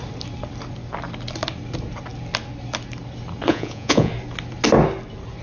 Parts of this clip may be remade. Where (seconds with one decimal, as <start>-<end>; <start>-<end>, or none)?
3.5-4.1